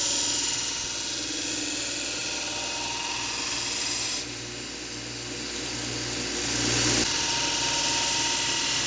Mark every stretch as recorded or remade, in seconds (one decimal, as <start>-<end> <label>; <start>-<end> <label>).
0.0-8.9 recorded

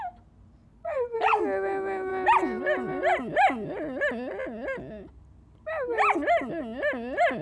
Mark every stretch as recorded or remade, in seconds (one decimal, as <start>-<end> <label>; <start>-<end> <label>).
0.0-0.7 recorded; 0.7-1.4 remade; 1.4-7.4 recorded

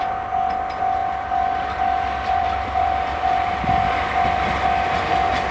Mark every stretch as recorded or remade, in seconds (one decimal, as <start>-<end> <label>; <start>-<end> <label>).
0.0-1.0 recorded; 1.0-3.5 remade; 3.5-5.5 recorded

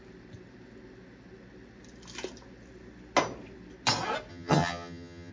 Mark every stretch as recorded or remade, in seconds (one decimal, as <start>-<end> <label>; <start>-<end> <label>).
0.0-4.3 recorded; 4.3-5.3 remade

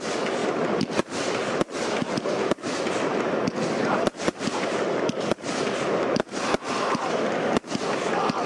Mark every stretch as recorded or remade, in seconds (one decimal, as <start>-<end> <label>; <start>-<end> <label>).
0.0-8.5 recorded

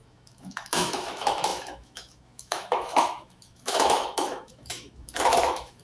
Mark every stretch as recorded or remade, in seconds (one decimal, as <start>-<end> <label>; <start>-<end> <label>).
0.0-5.8 remade

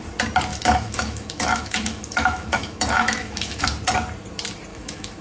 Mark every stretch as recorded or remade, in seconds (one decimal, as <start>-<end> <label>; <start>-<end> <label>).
0.0-0.5 recorded; 0.5-3.6 remade; 3.6-4.7 recorded; 4.7-5.2 remade